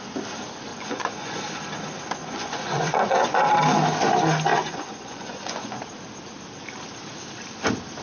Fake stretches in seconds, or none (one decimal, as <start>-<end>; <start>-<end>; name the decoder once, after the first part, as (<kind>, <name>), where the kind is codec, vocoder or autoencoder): 0.7-1.4 (vocoder, Vocos); 2.2-3.5; 4.5-5.8